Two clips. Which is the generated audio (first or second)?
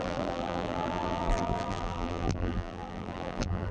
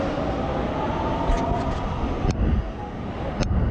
first